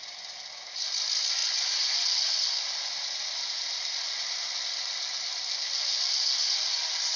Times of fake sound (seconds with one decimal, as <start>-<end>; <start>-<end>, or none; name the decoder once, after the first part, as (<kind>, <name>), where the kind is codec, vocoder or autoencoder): none